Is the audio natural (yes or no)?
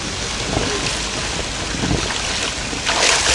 yes